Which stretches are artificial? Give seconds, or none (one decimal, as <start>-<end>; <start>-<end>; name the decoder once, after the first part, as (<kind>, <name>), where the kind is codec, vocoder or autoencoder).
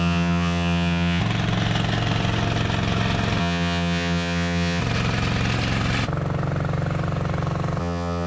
0.0-1.2 (vocoder, HiFi-GAN); 3.4-4.8; 7.8-8.3